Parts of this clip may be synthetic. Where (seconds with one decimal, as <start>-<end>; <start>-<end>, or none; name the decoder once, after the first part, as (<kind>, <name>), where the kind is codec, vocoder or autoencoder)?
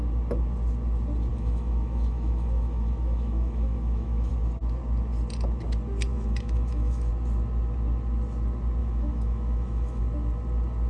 1.3-4.3 (autoencoder, DAC-VAE); 6.1-7.1; 8.8-10.0